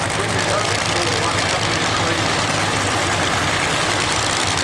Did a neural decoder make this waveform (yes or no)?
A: no